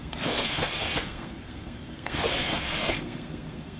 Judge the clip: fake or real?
fake